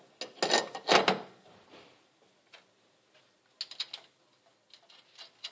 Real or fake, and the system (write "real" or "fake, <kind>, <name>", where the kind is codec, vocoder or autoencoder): real